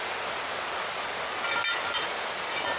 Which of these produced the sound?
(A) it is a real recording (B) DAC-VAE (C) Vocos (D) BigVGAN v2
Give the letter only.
A